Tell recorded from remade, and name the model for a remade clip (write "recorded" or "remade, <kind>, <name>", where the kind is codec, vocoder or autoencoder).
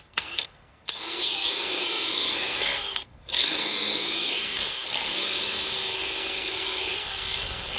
remade, codec, SNAC